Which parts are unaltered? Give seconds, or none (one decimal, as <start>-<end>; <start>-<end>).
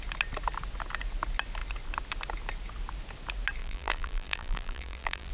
0.0-3.6